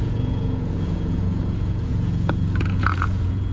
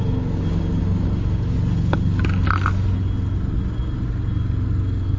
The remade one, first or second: first